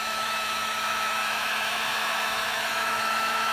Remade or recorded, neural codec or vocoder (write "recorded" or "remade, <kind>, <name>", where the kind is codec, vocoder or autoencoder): remade, autoencoder, DAC-VAE